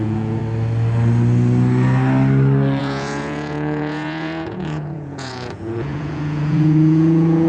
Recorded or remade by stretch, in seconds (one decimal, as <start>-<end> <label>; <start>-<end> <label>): 0.0-0.4 remade; 0.4-2.8 recorded; 2.8-7.5 remade